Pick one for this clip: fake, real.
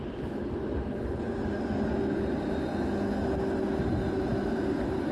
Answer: real